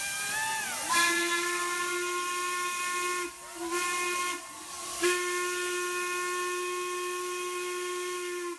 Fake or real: real